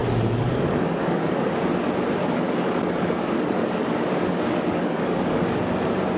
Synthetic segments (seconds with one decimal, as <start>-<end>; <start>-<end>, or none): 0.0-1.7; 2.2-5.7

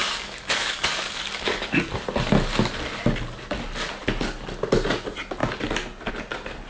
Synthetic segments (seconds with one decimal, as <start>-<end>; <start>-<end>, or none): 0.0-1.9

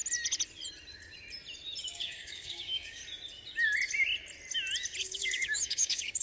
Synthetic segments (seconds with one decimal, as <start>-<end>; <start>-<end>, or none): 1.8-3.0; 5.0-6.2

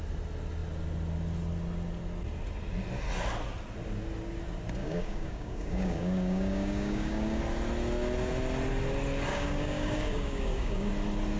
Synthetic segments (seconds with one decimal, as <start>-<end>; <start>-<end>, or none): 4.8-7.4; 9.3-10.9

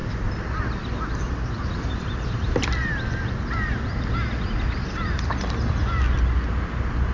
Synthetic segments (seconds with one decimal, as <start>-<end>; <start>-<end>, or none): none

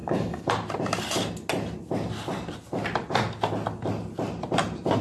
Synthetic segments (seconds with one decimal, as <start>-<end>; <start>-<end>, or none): 0.0-0.5